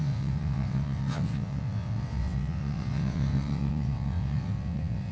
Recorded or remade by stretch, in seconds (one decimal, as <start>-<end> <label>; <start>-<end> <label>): 0.0-5.1 remade